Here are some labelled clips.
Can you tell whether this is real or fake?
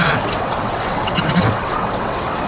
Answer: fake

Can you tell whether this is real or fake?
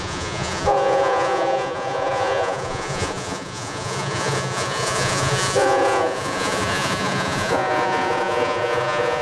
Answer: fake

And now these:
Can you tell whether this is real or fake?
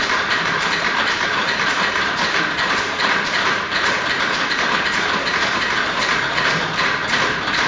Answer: fake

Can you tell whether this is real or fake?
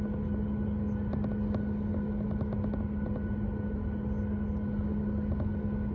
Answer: real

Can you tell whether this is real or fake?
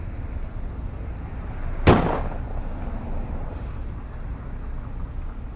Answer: real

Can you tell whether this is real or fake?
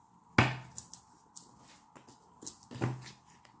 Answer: real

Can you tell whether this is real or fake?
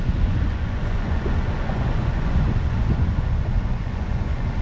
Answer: fake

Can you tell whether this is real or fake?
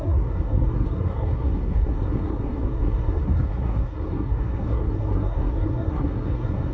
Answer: fake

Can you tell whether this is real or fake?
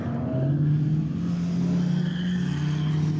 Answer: real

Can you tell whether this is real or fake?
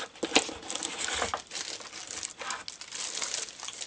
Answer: real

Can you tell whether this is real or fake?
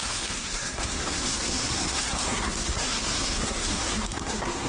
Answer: fake